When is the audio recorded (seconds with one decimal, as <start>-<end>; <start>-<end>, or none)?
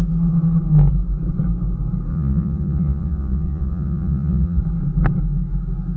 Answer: 0.0-2.1; 4.6-6.0